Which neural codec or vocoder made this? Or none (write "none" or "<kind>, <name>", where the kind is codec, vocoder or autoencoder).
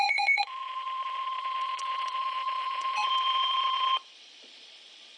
vocoder, Vocos